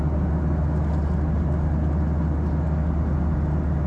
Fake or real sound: real